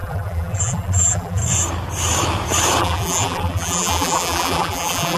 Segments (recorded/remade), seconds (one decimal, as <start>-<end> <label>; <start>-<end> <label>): 0.0-1.4 remade; 1.4-2.8 recorded; 2.8-5.2 remade